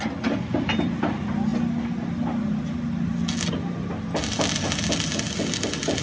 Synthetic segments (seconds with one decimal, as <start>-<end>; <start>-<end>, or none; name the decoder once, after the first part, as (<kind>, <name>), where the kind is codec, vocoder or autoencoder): none